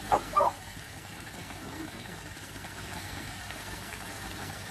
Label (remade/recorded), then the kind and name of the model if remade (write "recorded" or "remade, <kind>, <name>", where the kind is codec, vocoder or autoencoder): remade, codec, SNAC